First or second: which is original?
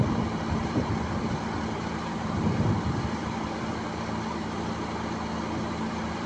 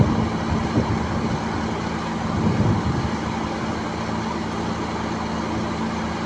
second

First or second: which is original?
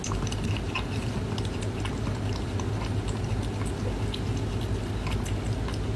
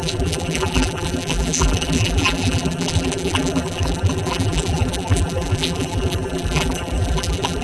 first